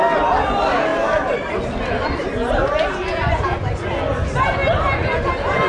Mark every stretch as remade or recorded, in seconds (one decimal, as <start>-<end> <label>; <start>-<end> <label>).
0.0-3.1 recorded; 3.1-3.9 remade; 3.9-5.7 recorded